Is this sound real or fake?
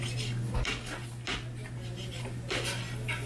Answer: real